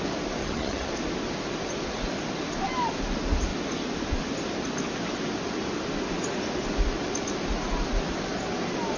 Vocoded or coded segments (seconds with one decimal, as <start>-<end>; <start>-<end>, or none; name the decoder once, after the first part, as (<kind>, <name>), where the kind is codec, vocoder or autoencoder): 0.4-0.9 (vocoder, HiFi-GAN)